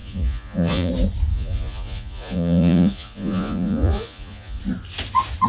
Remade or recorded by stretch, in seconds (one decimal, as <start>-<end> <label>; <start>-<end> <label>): 0.0-0.9 remade; 0.9-1.3 recorded; 1.3-4.6 remade; 4.6-5.5 recorded